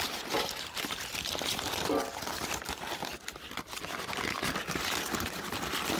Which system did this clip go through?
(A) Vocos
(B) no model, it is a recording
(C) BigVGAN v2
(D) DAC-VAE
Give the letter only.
B